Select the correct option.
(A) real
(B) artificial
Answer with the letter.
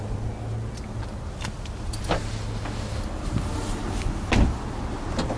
A